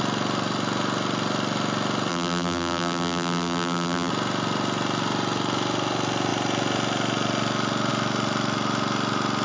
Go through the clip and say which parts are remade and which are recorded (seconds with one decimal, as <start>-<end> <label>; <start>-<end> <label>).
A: 0.0-2.1 recorded; 2.1-4.1 remade; 4.1-9.4 recorded

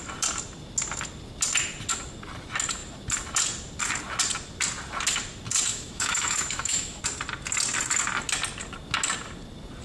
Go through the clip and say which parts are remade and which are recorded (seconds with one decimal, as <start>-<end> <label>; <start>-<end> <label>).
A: 0.0-5.7 recorded; 5.7-7.0 remade; 7.0-9.8 recorded

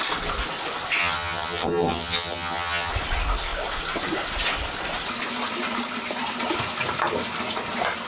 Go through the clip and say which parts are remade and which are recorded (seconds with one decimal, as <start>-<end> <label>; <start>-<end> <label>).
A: 0.0-1.0 recorded; 1.0-2.9 remade; 2.9-8.1 recorded

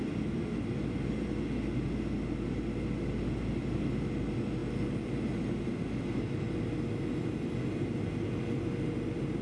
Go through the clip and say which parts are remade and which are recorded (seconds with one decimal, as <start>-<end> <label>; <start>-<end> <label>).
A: 0.0-9.4 recorded

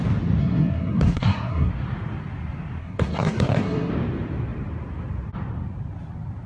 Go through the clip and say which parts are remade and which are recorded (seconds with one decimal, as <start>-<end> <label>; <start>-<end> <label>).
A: 0.0-0.4 recorded; 0.4-1.7 remade; 1.7-2.8 recorded; 2.8-3.9 remade; 3.9-6.5 recorded